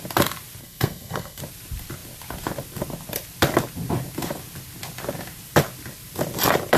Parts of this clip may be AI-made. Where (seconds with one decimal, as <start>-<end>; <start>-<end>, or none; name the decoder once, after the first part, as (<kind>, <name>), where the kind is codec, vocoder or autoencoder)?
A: 0.6-1.4 (codec, SNAC)